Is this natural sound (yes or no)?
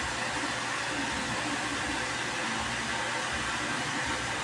yes